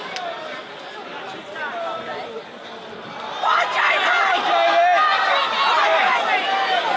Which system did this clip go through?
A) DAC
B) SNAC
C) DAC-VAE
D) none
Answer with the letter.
D